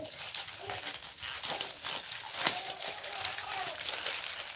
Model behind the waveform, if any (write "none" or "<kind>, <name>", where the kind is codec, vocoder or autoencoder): none